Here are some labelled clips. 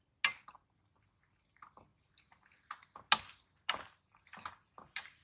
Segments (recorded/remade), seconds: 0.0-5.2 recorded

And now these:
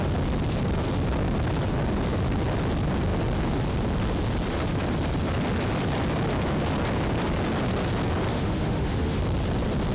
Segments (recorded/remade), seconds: 0.0-8.3 recorded; 8.3-9.2 remade; 9.2-9.9 recorded

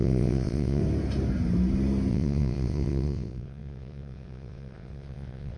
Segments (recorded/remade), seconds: 0.0-0.8 remade; 0.8-2.1 recorded; 2.1-5.6 remade

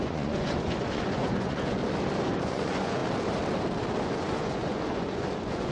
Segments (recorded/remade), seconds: 0.0-1.8 remade; 1.8-2.4 recorded; 2.4-3.0 remade; 3.0-4.0 recorded; 4.0-5.7 remade

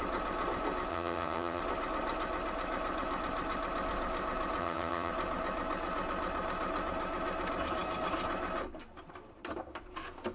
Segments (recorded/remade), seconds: 0.0-0.9 recorded; 0.9-1.6 remade; 1.6-4.6 recorded; 4.6-5.1 remade; 5.1-10.3 recorded